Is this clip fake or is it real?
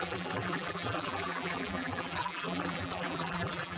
fake